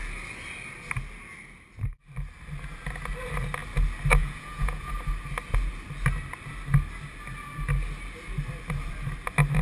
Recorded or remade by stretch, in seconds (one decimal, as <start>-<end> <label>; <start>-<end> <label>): 0.0-4.2 recorded; 4.2-4.9 remade; 4.9-9.6 recorded